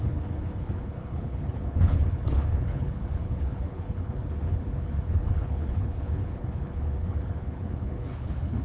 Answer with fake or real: fake